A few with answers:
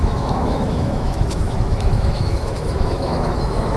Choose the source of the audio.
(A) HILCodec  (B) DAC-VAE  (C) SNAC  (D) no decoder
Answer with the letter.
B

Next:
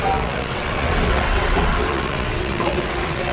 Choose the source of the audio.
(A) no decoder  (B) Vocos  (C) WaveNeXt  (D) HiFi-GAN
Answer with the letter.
C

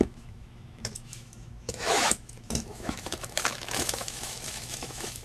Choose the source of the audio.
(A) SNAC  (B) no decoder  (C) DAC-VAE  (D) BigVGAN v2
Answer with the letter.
C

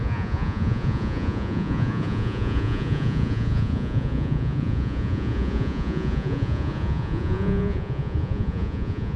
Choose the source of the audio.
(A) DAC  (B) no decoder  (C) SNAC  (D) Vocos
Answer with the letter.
D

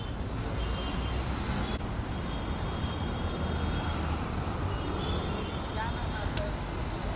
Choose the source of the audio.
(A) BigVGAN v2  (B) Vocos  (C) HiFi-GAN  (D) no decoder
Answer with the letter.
D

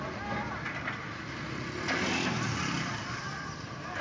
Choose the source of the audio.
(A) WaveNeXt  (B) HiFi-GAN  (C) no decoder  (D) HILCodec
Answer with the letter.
C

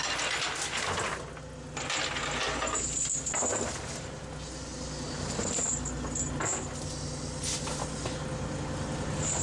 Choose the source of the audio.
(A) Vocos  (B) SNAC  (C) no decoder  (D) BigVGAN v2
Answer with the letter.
C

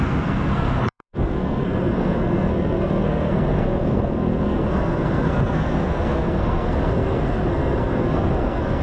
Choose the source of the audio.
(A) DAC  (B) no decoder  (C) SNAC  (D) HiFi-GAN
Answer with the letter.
C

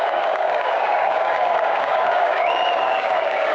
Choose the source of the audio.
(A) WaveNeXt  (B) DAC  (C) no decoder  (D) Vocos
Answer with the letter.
B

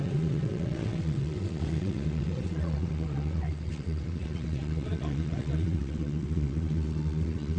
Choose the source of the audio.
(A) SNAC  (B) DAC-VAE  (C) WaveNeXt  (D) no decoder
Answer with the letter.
C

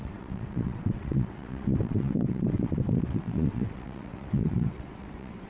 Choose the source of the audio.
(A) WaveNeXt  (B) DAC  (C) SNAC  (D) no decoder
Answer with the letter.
A